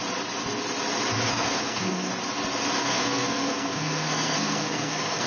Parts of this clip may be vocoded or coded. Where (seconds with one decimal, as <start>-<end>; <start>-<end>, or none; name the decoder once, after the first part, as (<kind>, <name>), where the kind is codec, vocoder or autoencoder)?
1.3-2.1 (codec, SNAC); 2.8-5.3